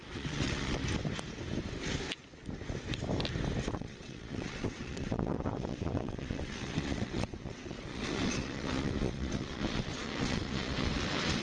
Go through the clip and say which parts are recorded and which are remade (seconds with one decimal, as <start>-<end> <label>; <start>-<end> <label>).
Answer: 0.0-0.8 remade; 0.8-3.7 recorded; 3.7-11.4 remade